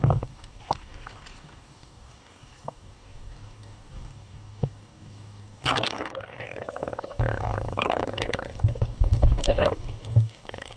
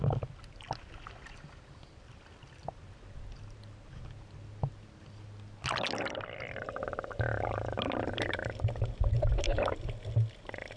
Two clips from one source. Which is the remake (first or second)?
first